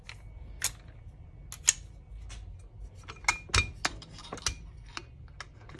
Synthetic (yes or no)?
no